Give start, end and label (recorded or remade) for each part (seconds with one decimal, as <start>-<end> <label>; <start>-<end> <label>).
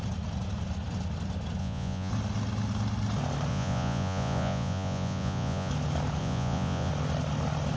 0.0-1.6 recorded; 1.6-2.1 remade; 2.1-3.5 recorded; 3.5-5.7 remade; 5.7-6.2 recorded; 6.2-6.9 remade; 6.9-7.8 recorded